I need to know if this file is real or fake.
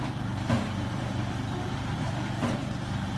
fake